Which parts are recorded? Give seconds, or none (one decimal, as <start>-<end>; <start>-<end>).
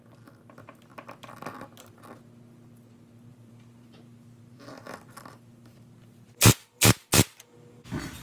0.0-3.3; 6.8-8.2